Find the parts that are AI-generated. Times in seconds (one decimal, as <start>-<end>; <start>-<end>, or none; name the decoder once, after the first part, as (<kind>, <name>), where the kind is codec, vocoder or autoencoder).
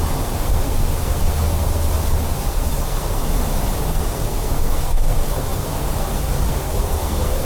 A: 0.0-3.3 (codec, SNAC); 3.8-7.4